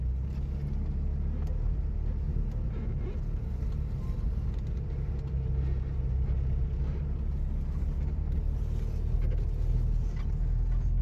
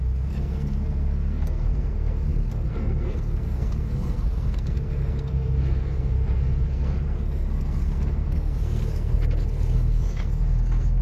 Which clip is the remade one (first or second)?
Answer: second